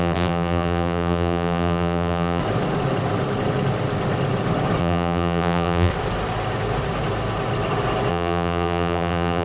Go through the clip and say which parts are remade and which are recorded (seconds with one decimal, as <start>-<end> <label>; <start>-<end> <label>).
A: 0.0-2.4 remade; 2.4-4.8 recorded; 4.8-5.9 remade; 5.9-8.1 recorded; 8.1-9.4 remade